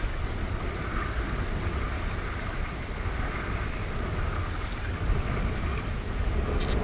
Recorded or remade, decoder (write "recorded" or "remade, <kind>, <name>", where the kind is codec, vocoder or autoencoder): recorded